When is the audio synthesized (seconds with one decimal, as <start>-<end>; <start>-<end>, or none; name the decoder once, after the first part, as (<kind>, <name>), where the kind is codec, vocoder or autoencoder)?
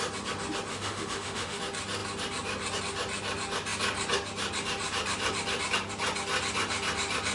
0.7-1.6 (autoencoder, DAC-VAE)